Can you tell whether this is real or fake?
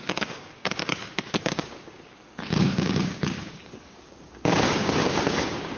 fake